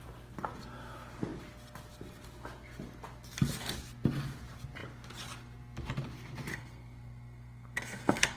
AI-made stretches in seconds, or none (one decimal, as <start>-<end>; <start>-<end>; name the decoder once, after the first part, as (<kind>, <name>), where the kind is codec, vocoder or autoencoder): 6.5-8.4 (codec, SNAC)